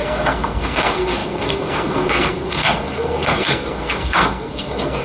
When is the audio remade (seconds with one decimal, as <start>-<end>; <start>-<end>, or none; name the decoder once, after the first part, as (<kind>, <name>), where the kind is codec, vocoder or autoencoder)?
0.0-5.0 (codec, SNAC)